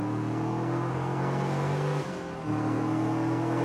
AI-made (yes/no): yes